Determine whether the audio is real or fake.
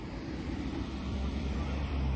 fake